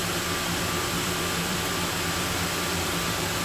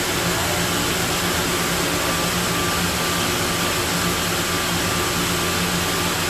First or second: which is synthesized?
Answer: first